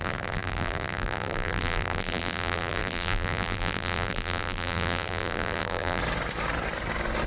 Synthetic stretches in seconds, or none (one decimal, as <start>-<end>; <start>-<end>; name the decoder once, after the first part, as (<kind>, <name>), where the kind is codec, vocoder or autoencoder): 0.0-6.0 (vocoder, BigVGAN v2)

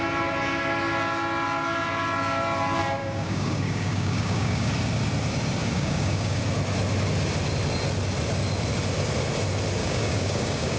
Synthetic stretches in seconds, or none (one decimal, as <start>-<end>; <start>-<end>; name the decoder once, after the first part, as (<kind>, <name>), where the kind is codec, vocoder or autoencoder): 3.0-4.7 (codec, DAC); 5.6-6.4; 9.8-10.8

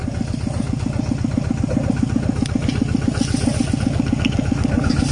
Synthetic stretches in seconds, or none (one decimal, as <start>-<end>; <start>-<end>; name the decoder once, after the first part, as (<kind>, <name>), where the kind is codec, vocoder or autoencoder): none

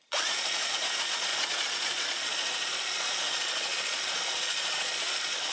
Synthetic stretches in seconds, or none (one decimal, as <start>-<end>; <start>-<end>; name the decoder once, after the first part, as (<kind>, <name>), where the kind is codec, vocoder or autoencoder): 0.0-5.5 (vocoder, Vocos)

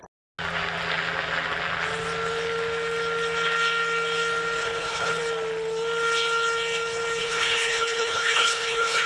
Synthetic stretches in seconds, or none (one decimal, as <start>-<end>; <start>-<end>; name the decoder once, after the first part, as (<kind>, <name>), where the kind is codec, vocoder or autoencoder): 4.6-5.2 (codec, HILCodec); 7.2-9.1